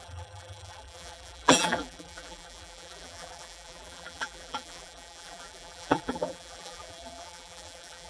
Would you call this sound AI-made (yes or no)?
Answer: yes